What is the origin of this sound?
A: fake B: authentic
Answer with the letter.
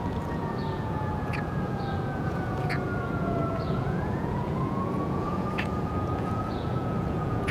A